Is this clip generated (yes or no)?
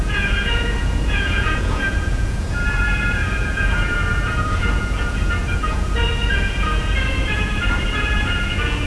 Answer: yes